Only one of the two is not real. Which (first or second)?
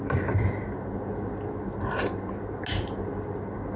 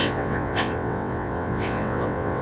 second